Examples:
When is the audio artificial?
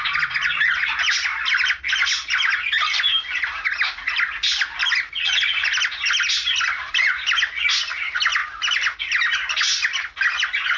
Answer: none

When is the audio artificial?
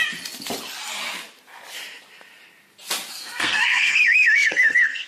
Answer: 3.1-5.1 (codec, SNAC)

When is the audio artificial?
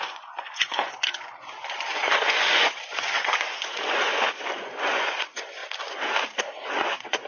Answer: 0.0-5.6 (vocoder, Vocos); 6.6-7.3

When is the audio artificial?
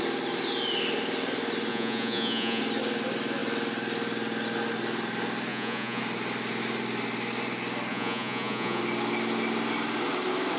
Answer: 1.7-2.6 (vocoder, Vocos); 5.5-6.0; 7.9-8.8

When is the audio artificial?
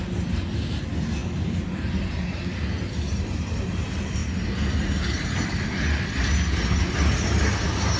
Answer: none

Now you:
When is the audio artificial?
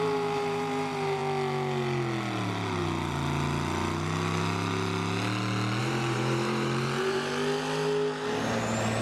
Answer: 0.0-1.2 (vocoder, BigVGAN v2); 5.8-7.3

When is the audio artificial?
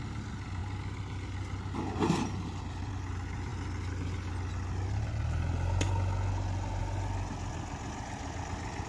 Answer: none